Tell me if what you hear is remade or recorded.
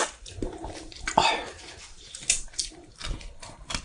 recorded